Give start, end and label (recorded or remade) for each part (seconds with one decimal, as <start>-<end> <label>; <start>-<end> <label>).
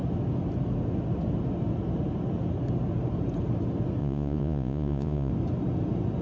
0.0-4.0 recorded; 4.0-5.3 remade; 5.3-6.2 recorded